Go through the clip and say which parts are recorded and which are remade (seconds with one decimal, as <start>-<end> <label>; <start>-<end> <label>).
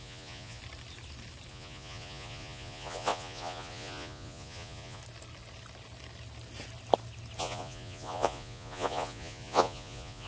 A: 0.0-0.6 remade; 0.6-1.5 recorded; 1.5-5.0 remade; 5.0-7.4 recorded; 7.4-10.3 remade